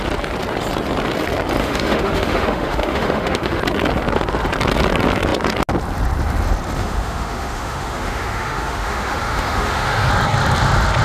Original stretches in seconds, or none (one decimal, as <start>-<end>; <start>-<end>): 0.0-1.6; 3.6-6.8; 10.1-11.0